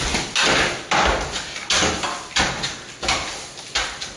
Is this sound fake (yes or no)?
no